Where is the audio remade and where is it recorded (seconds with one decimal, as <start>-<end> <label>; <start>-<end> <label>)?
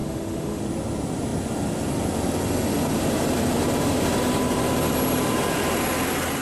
0.0-0.6 remade; 0.6-6.4 recorded